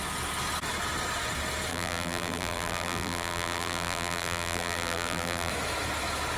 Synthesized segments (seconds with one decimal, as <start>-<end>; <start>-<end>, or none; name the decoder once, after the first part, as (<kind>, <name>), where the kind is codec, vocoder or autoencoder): 1.7-5.5 (vocoder, BigVGAN v2)

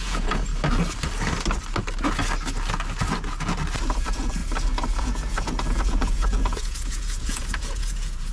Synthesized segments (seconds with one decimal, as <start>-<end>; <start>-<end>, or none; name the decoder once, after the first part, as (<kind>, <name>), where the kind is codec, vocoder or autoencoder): 0.0-0.5 (vocoder, Vocos); 4.0-4.4; 5.0-8.3

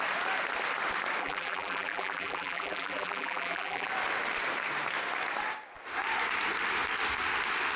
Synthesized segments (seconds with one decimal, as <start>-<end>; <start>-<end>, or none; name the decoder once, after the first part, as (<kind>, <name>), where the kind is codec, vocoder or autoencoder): 1.2-3.9 (vocoder, BigVGAN v2)

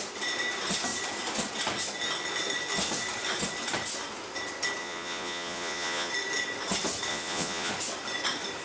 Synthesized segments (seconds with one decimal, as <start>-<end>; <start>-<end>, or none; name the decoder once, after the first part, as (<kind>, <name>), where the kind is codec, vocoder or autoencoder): 4.8-6.1 (vocoder, Vocos); 7.1-7.7

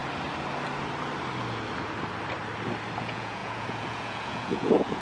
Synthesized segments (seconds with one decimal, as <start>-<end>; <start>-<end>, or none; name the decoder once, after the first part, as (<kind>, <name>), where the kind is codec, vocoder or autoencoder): 3.0-5.0 (vocoder, Vocos)

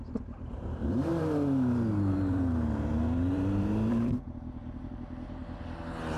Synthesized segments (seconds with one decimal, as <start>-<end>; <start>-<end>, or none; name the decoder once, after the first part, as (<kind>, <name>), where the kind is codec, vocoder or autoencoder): 0.0-5.4 (vocoder, BigVGAN v2)